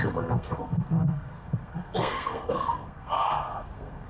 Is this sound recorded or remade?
remade